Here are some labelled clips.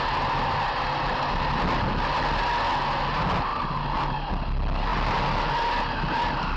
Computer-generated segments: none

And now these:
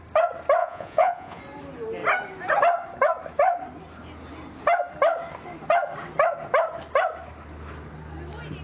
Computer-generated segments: 0.6-1.4 (vocoder, Vocos)

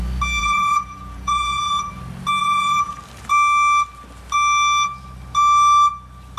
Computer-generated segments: 0.4-1.9 (vocoder, Vocos); 2.4-3.0

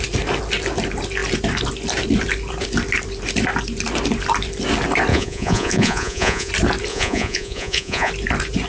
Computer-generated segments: 5.1-6.5 (vocoder, Vocos); 6.9-8.1

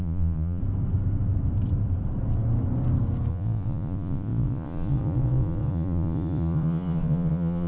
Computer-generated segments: 0.0-0.6 (vocoder, Vocos); 3.3-7.7

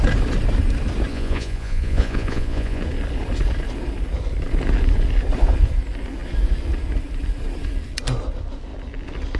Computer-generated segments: 1.1-2.8 (vocoder, Vocos)

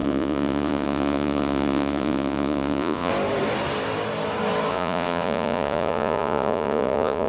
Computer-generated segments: 0.0-3.1 (vocoder, Vocos); 4.7-7.3